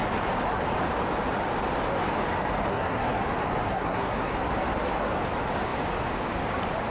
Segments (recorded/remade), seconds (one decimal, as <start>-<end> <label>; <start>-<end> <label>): 0.0-2.7 recorded; 2.7-3.2 remade; 3.2-3.7 recorded; 3.7-4.3 remade; 4.3-6.9 recorded